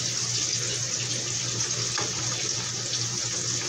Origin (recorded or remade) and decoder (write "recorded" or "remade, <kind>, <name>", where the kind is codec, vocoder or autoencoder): recorded